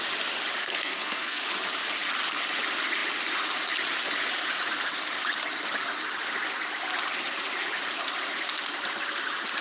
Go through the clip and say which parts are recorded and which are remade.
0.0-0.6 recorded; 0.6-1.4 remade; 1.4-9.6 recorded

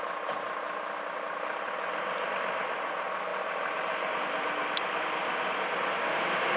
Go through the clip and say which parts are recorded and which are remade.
0.0-6.6 recorded